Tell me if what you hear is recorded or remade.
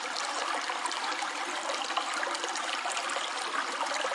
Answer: recorded